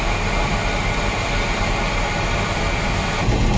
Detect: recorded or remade recorded